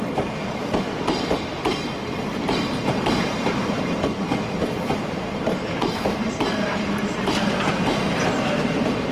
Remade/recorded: remade